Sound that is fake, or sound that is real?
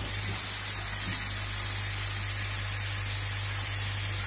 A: real